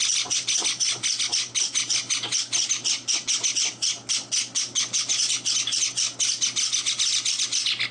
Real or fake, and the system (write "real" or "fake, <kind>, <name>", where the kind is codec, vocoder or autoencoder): real